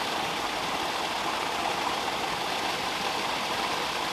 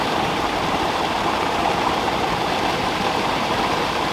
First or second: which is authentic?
first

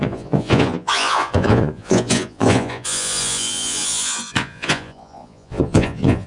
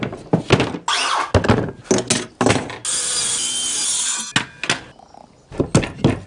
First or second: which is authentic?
second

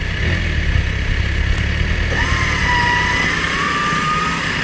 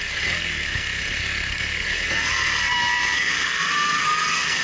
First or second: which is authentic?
first